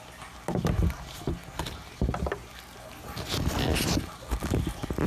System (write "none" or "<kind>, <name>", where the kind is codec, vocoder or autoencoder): none